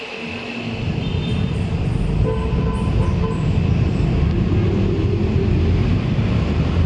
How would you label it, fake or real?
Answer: real